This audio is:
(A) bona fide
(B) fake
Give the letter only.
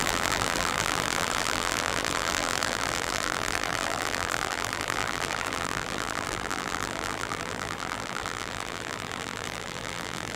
B